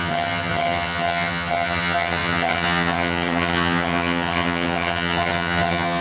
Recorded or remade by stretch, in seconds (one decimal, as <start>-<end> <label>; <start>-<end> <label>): 0.0-6.0 remade